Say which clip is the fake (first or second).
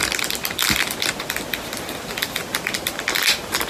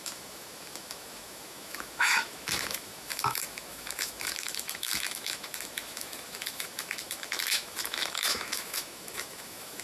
second